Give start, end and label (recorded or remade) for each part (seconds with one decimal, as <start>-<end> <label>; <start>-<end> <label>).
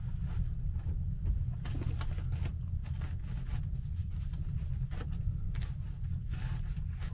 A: 0.0-2.8 recorded; 2.8-3.3 remade; 3.3-4.0 recorded; 4.0-6.4 remade; 6.4-7.1 recorded